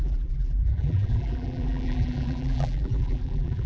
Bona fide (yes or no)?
no